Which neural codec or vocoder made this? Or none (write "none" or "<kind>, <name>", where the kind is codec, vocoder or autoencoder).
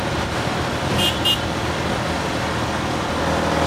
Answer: vocoder, BigVGAN v2